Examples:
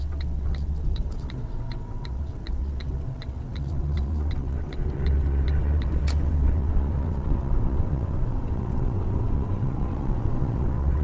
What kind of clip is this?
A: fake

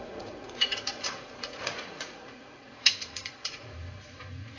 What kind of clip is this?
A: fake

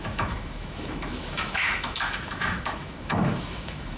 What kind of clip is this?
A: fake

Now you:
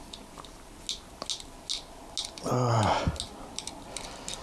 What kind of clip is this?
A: real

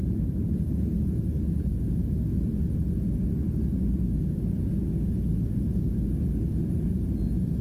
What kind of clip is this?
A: real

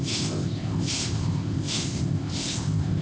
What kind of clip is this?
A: fake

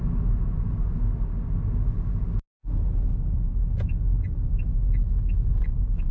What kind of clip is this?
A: real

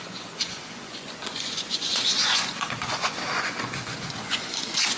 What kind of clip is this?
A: fake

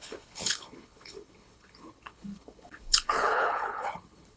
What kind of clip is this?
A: fake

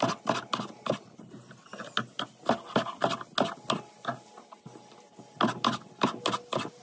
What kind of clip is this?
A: real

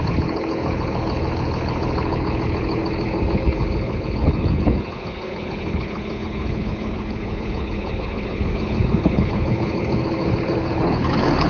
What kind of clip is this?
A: fake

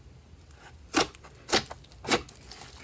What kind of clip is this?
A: real